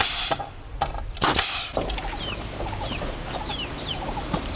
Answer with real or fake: real